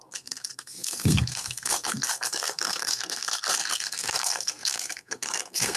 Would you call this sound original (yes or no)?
no